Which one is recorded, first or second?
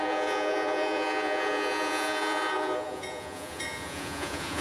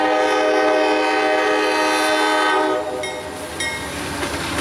second